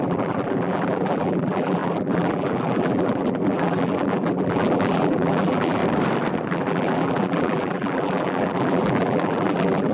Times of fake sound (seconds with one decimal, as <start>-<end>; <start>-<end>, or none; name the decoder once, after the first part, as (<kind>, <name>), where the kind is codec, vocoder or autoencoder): 0.0-5.8 (vocoder, BigVGAN v2); 6.5-9.9